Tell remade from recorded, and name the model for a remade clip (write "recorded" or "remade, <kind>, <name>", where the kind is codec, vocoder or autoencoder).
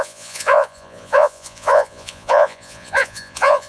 remade, vocoder, Vocos